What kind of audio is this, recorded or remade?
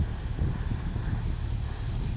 recorded